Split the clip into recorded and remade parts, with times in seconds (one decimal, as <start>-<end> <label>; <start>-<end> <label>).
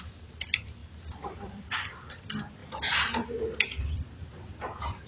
0.0-0.8 recorded; 0.8-2.2 remade; 2.2-5.1 recorded